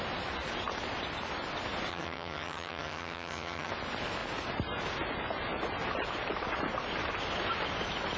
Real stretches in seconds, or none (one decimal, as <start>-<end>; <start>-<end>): 0.0-1.9; 3.7-8.2